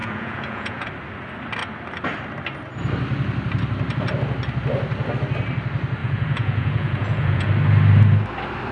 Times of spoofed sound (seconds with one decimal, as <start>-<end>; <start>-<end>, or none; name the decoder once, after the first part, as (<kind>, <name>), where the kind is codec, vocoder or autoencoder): 0.0-0.9 (vocoder, Vocos); 6.0-7.5